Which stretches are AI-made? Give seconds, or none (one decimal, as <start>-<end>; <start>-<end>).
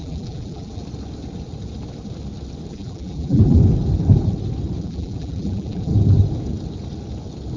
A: 0.0-0.8; 2.7-3.6; 4.8-5.9